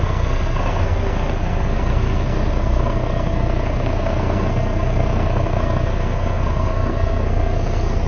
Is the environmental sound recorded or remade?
remade